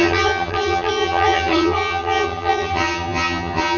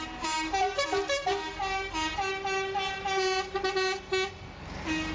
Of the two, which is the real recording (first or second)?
second